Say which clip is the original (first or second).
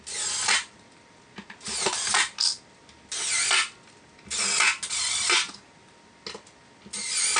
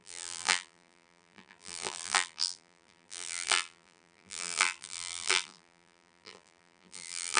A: first